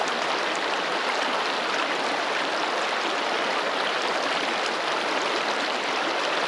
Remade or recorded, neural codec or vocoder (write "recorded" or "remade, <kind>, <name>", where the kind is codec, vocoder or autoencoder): recorded